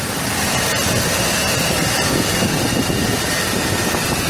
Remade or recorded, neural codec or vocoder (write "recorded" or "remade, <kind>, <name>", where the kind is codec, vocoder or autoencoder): recorded